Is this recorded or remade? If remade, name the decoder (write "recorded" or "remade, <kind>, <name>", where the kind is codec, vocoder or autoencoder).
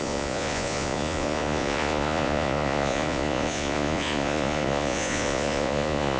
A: remade, vocoder, Vocos